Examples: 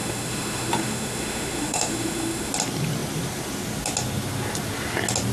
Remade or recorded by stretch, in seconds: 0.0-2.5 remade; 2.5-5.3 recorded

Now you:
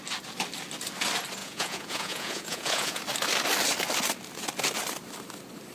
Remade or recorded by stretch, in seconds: 0.0-1.4 recorded; 1.4-3.0 remade; 3.0-5.7 recorded

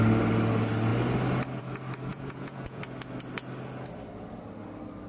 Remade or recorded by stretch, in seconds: 0.0-2.1 recorded; 2.1-2.8 remade; 2.8-5.1 recorded

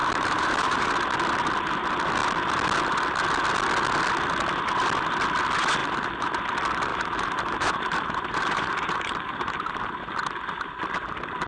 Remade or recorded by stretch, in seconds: 0.0-0.9 remade; 0.9-5.8 recorded; 5.8-6.3 remade; 6.3-6.9 recorded; 6.9-9.8 remade; 9.8-11.5 recorded

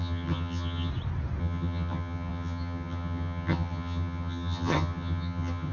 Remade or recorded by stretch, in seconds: 0.0-0.9 remade; 0.9-1.4 recorded; 1.4-5.7 remade

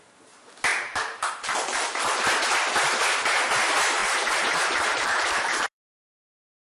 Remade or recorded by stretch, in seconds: 0.0-0.7 recorded; 0.7-2.2 remade; 2.2-4.0 recorded; 4.0-5.9 remade; 5.9-6.6 recorded

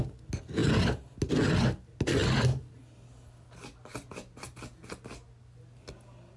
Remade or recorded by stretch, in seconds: 0.0-6.4 recorded

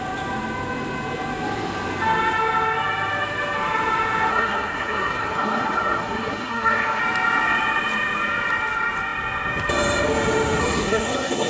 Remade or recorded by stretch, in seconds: 0.0-4.3 recorded; 4.3-7.0 remade; 7.0-10.6 recorded; 10.6-11.5 remade